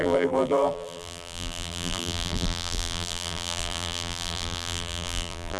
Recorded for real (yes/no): no